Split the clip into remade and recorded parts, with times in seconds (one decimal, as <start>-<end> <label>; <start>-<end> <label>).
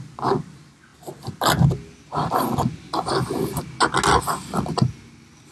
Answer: 0.0-5.5 recorded